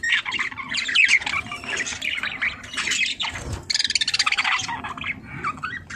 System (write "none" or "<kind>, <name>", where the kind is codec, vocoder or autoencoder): none